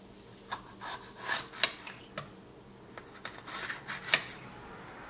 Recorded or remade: recorded